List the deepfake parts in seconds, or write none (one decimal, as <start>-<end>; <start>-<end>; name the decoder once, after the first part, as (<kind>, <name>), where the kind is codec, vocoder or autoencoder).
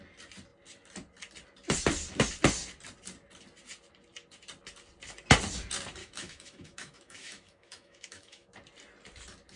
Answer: 6.0-8.5 (autoencoder, DAC-VAE)